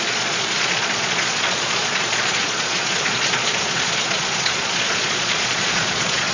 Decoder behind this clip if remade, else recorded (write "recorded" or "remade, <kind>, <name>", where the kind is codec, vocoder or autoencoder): remade, vocoder, Vocos